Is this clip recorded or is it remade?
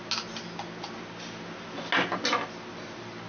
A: recorded